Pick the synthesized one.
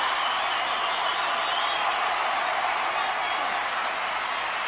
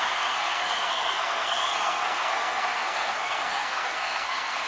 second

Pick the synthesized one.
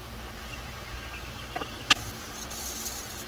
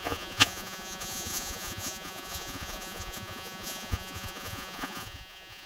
second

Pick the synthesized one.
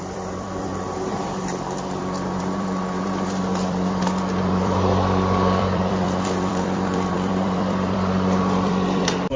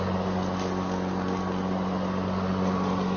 first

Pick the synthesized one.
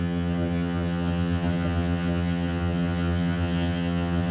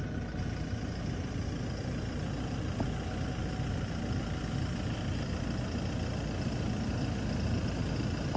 first